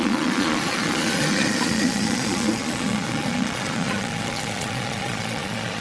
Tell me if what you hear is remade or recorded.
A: remade